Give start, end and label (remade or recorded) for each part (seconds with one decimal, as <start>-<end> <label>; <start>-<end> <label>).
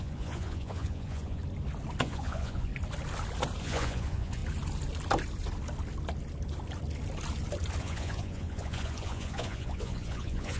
0.0-1.4 remade; 1.4-2.0 recorded; 2.0-2.7 remade; 2.7-3.6 recorded; 3.6-4.4 remade; 4.4-7.8 recorded; 7.8-10.6 remade